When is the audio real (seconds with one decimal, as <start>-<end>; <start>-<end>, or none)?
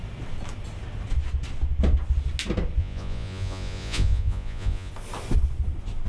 0.0-2.8; 4.9-6.1